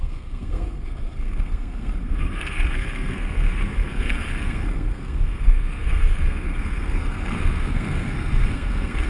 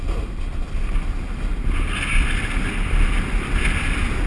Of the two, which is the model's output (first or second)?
first